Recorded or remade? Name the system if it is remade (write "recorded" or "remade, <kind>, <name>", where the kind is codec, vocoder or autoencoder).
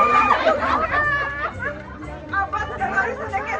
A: recorded